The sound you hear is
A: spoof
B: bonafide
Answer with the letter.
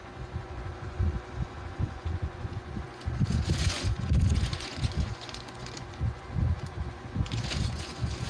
A